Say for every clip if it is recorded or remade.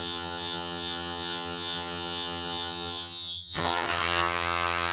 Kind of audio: remade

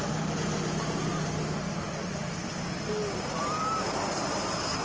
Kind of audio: recorded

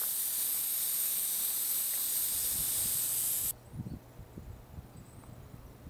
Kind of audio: recorded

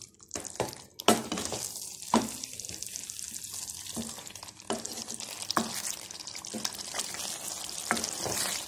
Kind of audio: recorded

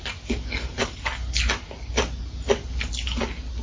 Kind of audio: recorded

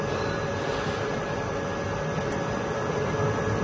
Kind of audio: recorded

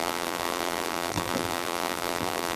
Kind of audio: remade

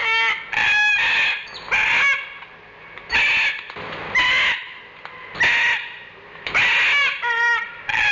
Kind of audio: recorded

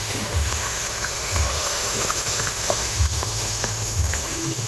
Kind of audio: remade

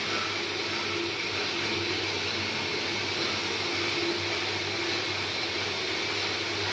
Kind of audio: recorded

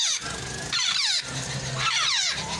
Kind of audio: recorded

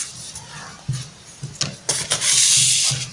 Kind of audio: recorded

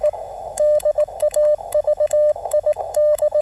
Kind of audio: remade